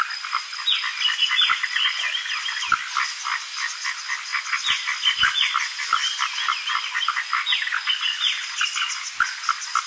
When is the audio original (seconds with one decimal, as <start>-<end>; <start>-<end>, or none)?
0.0-9.9